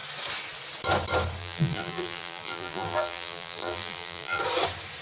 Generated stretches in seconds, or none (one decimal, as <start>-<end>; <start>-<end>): 1.4-4.4